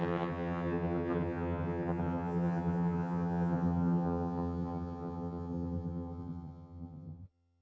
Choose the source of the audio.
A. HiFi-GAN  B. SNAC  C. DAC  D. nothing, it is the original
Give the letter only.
A